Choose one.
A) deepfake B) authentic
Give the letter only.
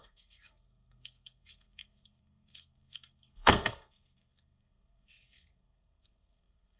A